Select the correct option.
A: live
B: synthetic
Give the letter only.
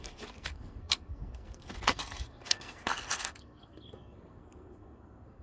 B